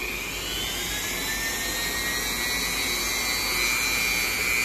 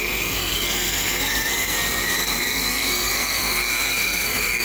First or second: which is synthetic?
second